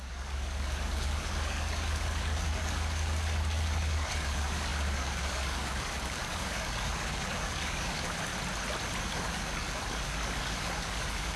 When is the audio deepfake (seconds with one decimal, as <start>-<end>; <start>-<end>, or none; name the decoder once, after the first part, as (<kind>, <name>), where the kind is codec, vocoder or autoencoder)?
0.0-8.3 (codec, DAC); 9.0-11.4